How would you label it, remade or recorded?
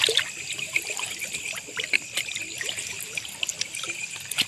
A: recorded